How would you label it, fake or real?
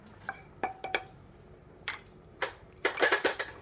fake